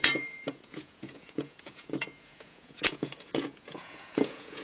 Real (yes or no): no